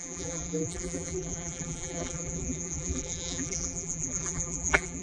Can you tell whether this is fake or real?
fake